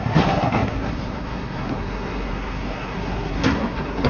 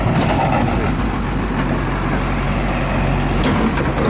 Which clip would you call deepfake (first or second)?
first